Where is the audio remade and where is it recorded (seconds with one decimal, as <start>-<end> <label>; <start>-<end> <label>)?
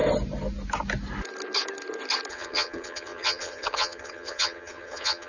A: 0.0-2.3 recorded; 2.3-5.3 remade